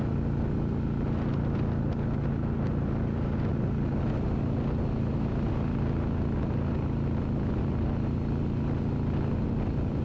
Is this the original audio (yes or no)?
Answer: yes